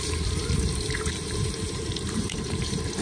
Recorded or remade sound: remade